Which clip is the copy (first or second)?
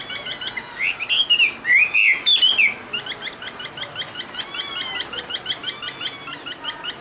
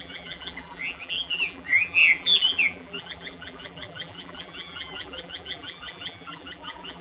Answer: second